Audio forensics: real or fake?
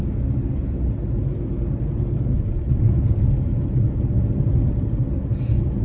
real